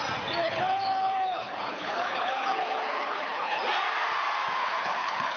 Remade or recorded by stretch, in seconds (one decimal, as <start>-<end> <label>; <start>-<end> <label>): 0.0-0.4 recorded; 0.4-3.6 remade; 3.6-4.6 recorded; 4.6-5.4 remade